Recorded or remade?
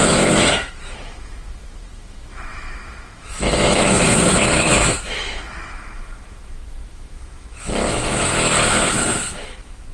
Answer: remade